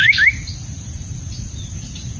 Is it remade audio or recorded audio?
remade